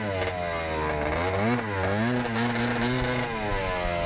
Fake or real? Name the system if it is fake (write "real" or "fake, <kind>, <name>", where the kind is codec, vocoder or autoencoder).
real